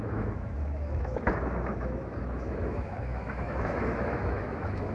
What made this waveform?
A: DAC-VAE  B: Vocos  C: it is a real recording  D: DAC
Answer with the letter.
A